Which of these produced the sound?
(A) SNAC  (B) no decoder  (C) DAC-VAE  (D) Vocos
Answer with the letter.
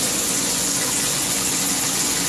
D